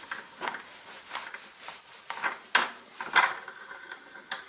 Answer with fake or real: real